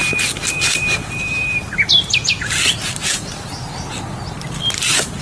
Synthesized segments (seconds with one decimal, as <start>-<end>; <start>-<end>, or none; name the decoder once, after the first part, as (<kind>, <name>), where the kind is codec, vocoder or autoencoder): none